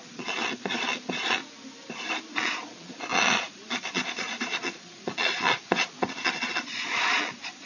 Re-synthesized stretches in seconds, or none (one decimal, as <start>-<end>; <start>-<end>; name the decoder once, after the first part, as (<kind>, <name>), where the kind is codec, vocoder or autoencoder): 0.0-1.4 (vocoder, Vocos); 2.3-7.7

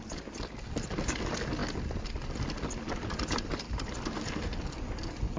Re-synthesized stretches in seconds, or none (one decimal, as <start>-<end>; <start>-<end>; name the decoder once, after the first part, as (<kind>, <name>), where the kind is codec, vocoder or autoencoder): none

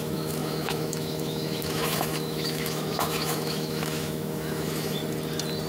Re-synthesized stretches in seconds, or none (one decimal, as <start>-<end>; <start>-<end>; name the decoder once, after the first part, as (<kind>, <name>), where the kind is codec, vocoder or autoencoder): 0.0-5.0 (autoencoder, DAC-VAE)

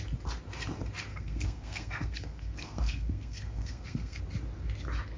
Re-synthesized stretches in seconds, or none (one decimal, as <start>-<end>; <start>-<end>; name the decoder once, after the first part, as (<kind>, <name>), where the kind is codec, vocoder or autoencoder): 1.1-4.2 (codec, SNAC)

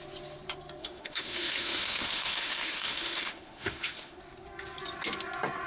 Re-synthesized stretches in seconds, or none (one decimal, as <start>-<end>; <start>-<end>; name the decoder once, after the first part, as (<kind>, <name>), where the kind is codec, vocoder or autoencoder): 0.8-4.2 (autoencoder, DAC-VAE)

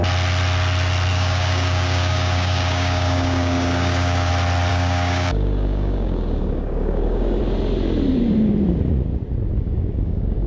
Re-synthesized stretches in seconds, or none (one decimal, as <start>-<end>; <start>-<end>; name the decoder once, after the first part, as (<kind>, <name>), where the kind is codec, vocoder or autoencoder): 1.1-4.3 (codec, DAC); 4.7-7.4; 9.5-10.5

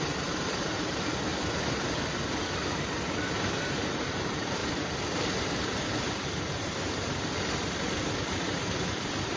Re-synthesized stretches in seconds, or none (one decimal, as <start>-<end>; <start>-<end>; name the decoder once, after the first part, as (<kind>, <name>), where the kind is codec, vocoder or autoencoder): 0.0-1.3 (vocoder, BigVGAN v2); 3.6-9.4